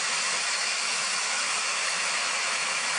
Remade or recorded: remade